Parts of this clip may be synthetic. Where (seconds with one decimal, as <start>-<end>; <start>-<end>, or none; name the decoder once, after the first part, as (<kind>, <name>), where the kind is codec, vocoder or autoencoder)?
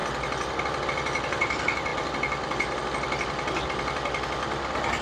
none